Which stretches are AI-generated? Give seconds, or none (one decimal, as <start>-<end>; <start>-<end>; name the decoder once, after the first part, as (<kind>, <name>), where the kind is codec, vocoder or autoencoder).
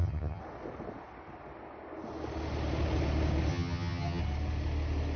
0.0-0.4 (vocoder, HiFi-GAN); 3.5-4.2